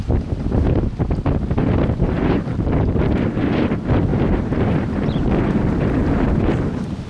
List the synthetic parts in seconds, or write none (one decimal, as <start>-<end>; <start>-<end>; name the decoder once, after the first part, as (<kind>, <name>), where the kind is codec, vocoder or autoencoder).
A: 1.6-2.9 (vocoder, BigVGAN v2); 4.1-6.6